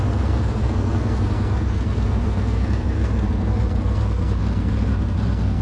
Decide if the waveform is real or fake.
fake